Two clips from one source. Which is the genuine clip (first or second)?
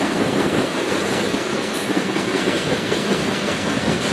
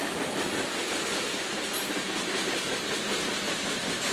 second